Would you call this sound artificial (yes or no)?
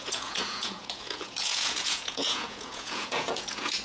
yes